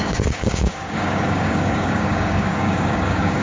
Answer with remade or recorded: remade